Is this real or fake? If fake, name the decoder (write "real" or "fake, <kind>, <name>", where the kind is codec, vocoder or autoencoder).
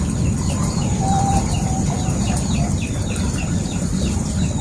fake, vocoder, BigVGAN v2